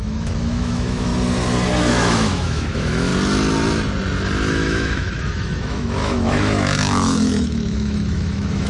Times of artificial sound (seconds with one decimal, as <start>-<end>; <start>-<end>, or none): 0.0-1.1; 1.9-3.1; 4.5-8.7